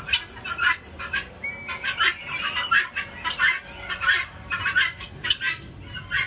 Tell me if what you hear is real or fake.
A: real